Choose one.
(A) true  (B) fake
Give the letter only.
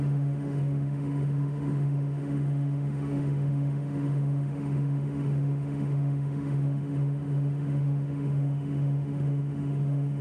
B